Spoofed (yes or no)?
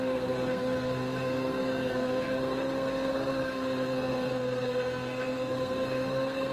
yes